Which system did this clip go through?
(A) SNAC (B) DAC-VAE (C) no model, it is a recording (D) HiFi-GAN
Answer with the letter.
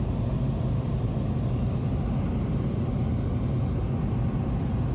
C